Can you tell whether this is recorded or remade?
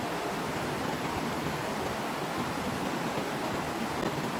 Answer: recorded